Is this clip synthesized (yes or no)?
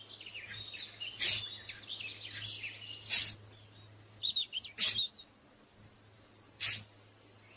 no